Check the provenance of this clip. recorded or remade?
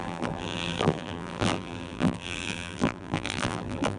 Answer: remade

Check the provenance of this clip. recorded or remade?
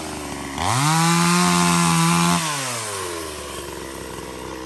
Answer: recorded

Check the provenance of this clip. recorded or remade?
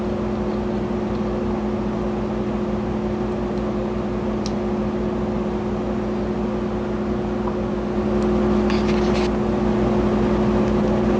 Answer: recorded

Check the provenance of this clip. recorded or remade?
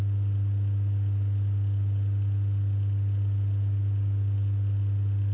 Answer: recorded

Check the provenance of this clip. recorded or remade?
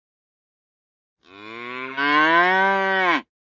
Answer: recorded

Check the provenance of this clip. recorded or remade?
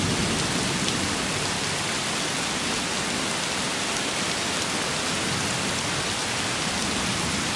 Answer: recorded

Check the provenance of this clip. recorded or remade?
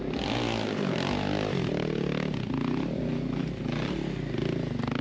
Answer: recorded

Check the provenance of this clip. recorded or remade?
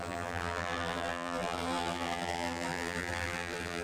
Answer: remade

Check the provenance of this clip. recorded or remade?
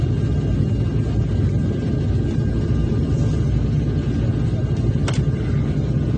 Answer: recorded